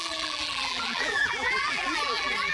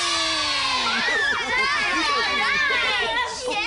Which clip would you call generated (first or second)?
first